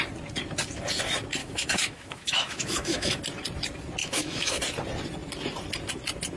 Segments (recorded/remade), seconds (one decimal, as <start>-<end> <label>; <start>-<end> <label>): 0.0-1.4 recorded; 1.4-3.2 remade; 3.2-4.0 recorded; 4.0-4.6 remade; 4.6-6.4 recorded